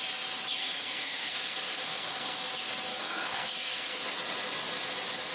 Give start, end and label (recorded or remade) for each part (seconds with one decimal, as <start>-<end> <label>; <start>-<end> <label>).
0.0-0.6 recorded; 0.6-2.5 remade; 2.5-2.9 recorded; 2.9-4.0 remade; 4.0-5.3 recorded